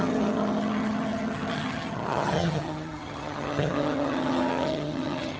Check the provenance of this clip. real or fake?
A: fake